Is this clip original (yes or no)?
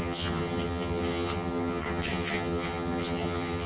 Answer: no